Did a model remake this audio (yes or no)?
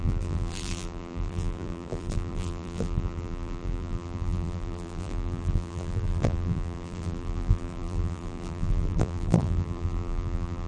yes